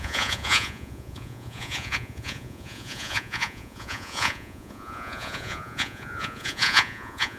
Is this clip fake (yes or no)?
yes